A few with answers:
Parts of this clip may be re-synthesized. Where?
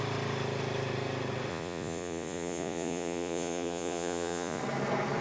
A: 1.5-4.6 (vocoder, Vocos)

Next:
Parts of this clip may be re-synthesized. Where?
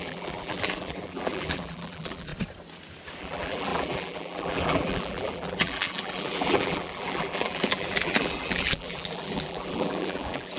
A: 0.0-2.3 (vocoder, BigVGAN v2); 3.2-10.6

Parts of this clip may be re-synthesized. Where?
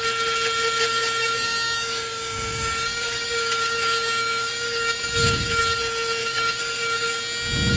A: 0.9-5.6 (codec, DAC); 6.2-7.2